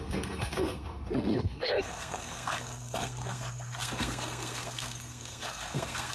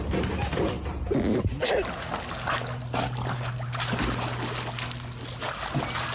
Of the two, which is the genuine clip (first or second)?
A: second